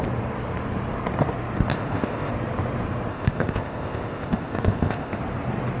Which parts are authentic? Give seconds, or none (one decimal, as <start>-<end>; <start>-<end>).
0.0-1.7; 2.3-3.1; 5.2-5.8